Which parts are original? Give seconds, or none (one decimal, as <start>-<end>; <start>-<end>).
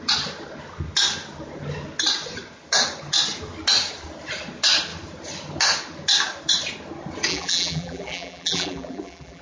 0.0-7.3